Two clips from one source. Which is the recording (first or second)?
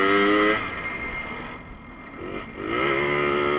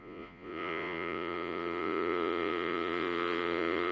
first